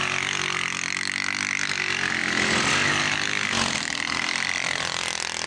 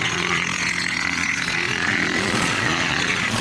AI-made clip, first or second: second